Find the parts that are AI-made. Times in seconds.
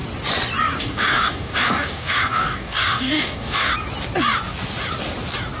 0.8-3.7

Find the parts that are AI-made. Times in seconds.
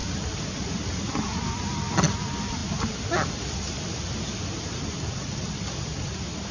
none